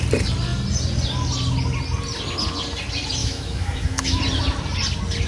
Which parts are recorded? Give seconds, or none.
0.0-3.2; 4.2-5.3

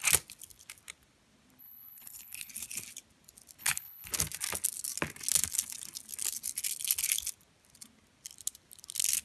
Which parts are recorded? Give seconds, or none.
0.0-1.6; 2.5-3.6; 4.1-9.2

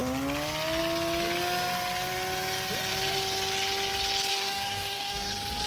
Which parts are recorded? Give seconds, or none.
0.0-4.3; 5.3-5.7

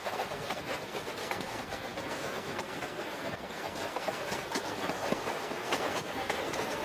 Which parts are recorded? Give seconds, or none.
none

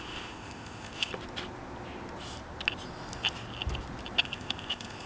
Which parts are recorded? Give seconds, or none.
1.1-4.2

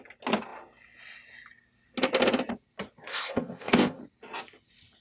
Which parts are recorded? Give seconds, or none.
0.0-3.1; 4.0-5.0